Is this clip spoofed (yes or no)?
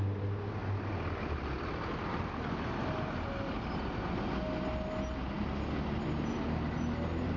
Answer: no